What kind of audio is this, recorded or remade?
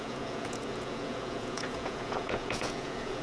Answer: remade